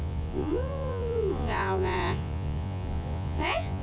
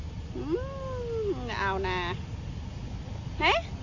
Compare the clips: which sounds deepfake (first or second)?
first